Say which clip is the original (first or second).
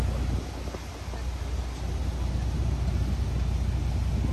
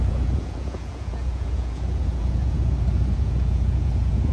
first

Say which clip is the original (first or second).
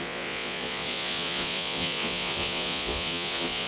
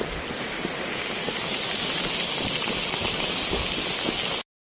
second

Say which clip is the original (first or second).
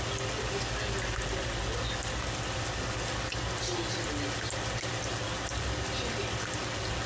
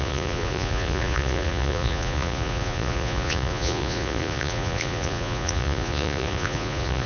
first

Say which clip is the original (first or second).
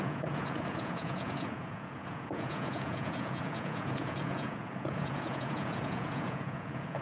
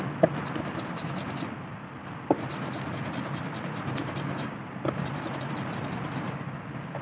second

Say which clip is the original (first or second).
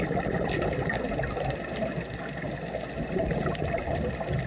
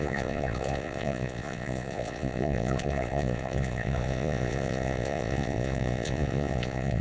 first